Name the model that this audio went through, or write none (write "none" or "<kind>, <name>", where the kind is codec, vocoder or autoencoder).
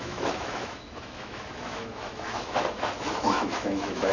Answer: autoencoder, DAC-VAE